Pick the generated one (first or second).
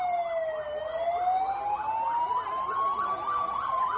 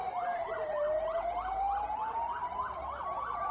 second